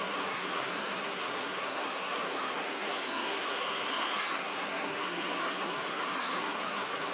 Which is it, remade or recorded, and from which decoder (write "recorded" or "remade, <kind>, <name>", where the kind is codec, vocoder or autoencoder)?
remade, codec, SNAC